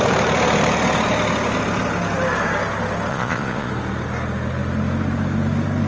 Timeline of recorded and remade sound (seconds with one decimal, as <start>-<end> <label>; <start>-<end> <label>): 0.0-3.1 recorded; 3.1-3.7 remade; 3.7-5.9 recorded